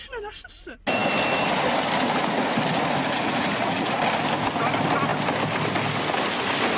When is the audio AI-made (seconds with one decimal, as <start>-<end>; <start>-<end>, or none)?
3.0-4.0

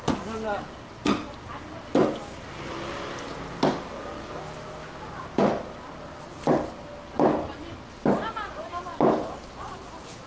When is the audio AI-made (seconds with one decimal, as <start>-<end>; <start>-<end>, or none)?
none